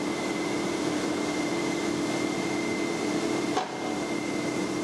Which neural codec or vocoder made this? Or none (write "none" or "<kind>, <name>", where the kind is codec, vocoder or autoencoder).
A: none